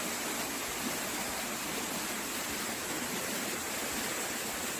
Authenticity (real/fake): real